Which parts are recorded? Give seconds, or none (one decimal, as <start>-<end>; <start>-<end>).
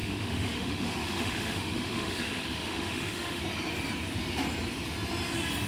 3.4-5.7